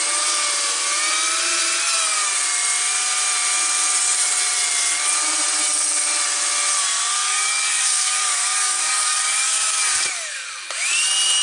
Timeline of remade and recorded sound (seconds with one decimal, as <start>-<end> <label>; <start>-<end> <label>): 0.0-7.2 recorded; 7.2-9.8 remade; 9.8-11.4 recorded